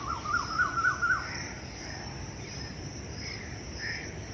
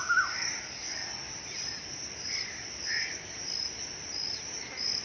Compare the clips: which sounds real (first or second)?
second